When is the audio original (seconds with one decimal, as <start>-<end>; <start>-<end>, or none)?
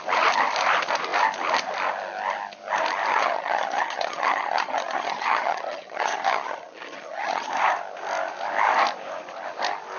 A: 0.0-3.1; 7.5-10.0